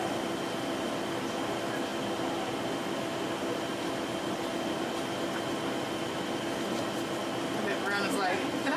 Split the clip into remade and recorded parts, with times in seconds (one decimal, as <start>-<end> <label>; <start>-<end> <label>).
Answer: 0.0-8.8 recorded